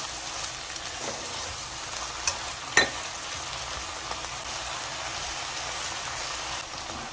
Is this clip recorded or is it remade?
recorded